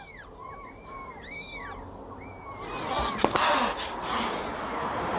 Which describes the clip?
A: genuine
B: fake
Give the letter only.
A